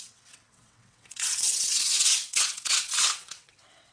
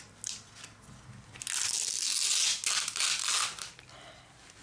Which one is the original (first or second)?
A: second